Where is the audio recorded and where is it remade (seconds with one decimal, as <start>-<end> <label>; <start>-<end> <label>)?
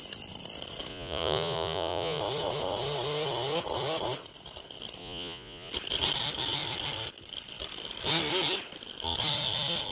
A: 0.0-0.9 recorded; 0.9-2.2 remade; 2.2-5.0 recorded; 5.0-5.7 remade; 5.7-9.9 recorded